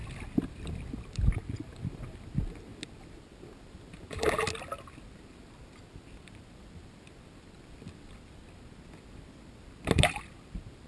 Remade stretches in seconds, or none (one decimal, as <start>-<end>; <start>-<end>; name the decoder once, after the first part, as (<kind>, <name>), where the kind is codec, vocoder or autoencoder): none